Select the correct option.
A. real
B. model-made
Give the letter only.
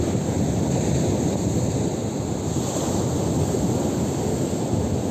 A